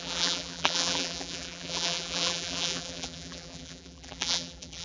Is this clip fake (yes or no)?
yes